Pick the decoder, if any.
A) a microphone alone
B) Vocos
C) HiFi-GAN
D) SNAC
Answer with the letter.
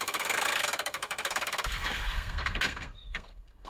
D